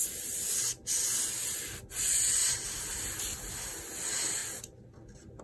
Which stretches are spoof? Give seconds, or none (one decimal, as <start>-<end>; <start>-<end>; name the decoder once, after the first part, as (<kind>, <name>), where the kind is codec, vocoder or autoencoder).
2.4-3.0 (vocoder, BigVGAN v2)